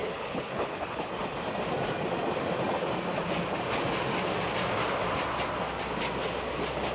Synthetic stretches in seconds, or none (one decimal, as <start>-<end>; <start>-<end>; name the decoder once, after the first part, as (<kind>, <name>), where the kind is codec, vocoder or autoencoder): 0.0-1.1 (codec, HILCodec)